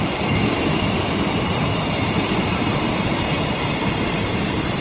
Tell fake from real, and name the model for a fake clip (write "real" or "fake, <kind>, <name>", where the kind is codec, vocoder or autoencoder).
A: fake, vocoder, BigVGAN v2